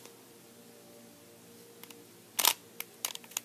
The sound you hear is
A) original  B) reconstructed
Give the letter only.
A